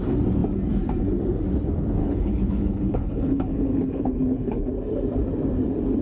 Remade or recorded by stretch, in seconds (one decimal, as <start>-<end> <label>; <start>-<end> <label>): 0.0-2.0 recorded; 2.0-4.7 remade; 4.7-6.0 recorded